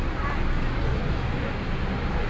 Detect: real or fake real